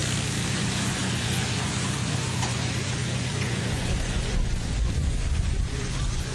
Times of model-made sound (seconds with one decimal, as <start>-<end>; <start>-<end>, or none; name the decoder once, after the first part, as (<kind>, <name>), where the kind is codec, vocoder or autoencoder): 0.5-6.3 (vocoder, Vocos)